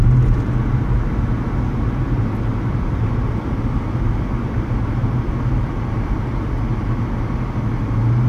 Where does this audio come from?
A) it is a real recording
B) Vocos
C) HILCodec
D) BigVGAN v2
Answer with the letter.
A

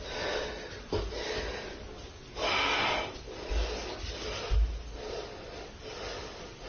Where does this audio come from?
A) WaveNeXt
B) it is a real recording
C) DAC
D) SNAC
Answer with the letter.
B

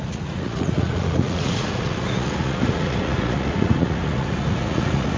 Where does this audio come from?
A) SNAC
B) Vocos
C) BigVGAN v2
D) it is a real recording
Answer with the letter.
B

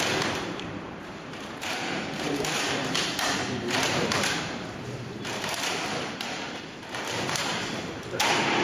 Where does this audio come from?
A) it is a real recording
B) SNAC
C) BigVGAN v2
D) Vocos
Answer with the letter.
C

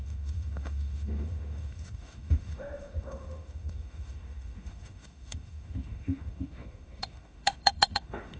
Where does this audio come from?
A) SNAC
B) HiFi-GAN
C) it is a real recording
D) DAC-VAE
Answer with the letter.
D